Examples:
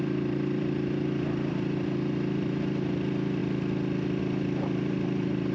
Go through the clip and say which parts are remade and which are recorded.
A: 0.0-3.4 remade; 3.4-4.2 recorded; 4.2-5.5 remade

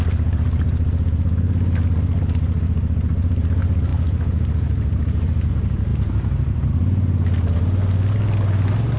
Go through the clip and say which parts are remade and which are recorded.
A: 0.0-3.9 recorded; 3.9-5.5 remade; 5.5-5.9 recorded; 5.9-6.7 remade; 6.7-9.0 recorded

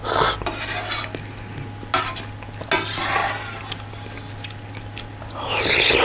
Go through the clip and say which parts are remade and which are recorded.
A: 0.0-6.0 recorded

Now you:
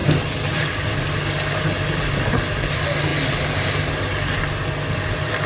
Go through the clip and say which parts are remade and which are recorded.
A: 0.0-0.9 remade; 0.9-3.1 recorded; 3.1-4.4 remade; 4.4-5.5 recorded